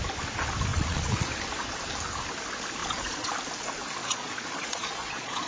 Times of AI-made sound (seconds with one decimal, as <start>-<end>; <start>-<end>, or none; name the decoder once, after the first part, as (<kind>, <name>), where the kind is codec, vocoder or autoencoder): 0.7-1.3 (vocoder, Vocos); 2.8-3.3; 4.0-5.5